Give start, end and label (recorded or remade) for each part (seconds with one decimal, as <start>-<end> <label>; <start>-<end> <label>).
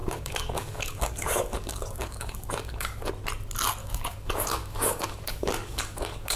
0.0-3.1 remade; 3.1-3.8 recorded; 3.8-6.4 remade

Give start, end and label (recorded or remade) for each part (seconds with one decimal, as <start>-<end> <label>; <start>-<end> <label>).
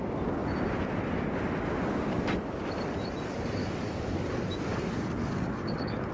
0.0-3.6 recorded; 3.6-4.3 remade; 4.3-4.7 recorded; 4.7-6.1 remade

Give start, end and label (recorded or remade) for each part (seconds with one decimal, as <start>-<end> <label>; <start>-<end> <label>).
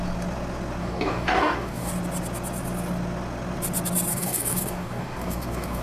0.0-0.8 recorded; 0.8-1.9 remade; 1.9-4.1 recorded; 4.1-5.8 remade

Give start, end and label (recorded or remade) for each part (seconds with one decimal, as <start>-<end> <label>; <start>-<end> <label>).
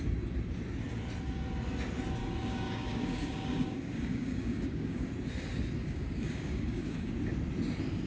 0.0-2.2 recorded; 2.2-5.1 remade; 5.1-5.8 recorded; 5.8-7.1 remade; 7.1-8.1 recorded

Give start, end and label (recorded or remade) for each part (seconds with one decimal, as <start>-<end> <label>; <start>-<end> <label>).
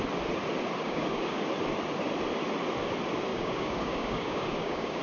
0.0-0.8 recorded; 0.8-1.4 remade; 1.4-3.3 recorded; 3.3-5.0 remade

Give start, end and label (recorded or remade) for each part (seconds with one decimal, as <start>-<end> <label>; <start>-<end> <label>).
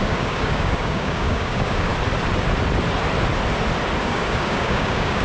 0.0-1.9 remade; 1.9-4.0 recorded; 4.0-5.2 remade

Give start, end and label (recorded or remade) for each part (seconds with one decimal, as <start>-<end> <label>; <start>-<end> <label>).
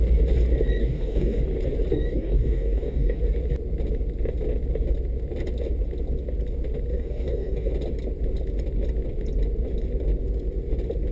0.0-0.8 recorded; 0.8-1.4 remade; 1.4-2.1 recorded; 2.1-3.2 remade; 3.2-6.9 recorded; 6.9-7.7 remade; 7.7-11.1 recorded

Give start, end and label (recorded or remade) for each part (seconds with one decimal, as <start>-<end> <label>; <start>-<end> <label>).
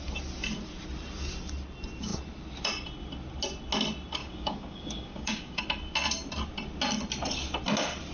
0.0-4.2 recorded; 4.2-5.6 remade; 5.6-8.1 recorded